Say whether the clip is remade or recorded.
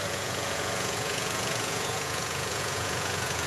remade